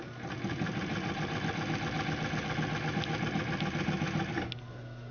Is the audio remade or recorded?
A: recorded